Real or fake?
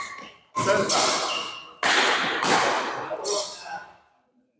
real